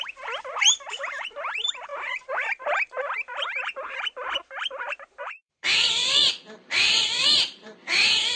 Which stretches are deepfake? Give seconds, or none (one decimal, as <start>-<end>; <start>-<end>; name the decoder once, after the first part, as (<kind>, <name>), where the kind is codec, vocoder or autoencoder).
0.0-8.4 (vocoder, BigVGAN v2)